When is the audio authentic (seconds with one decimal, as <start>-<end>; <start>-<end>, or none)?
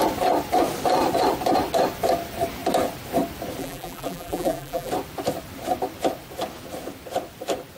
0.0-3.6; 4.9-7.8